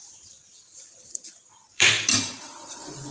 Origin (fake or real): fake